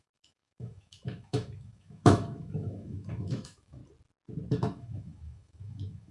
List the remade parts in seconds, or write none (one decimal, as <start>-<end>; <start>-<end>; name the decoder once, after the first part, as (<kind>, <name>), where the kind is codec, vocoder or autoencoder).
0.0-3.8 (autoencoder, DAC-VAE); 4.5-6.1